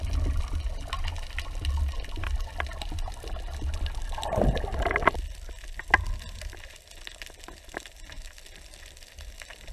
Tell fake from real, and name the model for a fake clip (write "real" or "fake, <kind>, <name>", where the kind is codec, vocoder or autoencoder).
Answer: real